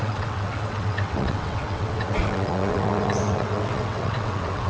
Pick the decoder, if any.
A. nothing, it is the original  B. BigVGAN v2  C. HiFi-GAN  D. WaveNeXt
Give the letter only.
D